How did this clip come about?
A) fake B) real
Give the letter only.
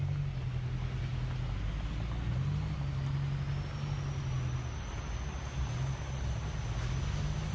B